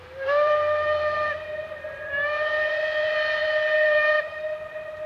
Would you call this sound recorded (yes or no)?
no